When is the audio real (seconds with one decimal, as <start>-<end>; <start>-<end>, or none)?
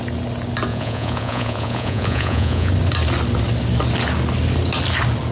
0.0-0.7; 2.7-5.3